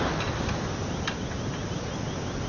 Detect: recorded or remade recorded